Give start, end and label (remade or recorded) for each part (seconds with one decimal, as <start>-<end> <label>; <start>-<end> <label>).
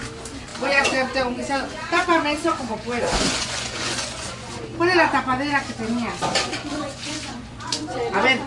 0.0-0.5 recorded; 0.5-4.6 remade; 4.6-6.7 recorded; 6.7-8.0 remade; 8.0-8.5 recorded